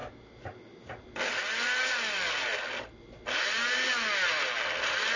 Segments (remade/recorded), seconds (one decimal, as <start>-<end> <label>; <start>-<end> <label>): 0.0-5.2 recorded